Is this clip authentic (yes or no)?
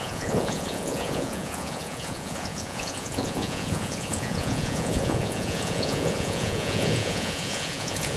no